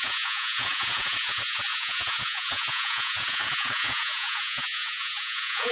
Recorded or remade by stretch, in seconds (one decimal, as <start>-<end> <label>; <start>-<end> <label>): 0.0-5.7 remade